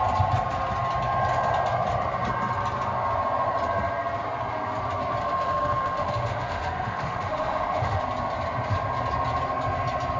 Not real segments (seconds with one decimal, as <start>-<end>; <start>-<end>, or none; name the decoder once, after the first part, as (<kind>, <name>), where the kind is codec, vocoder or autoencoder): 5.2-8.0 (autoencoder, DAC-VAE)